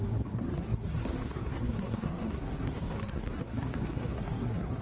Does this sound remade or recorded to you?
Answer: remade